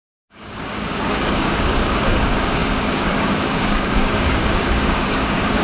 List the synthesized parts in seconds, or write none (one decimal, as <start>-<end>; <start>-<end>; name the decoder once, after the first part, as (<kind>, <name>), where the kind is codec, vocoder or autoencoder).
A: 0.0-5.6 (codec, DAC)